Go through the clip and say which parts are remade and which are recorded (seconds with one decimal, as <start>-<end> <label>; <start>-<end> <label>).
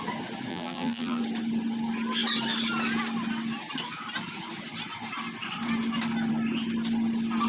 0.0-0.5 recorded; 0.5-1.2 remade; 1.2-7.5 recorded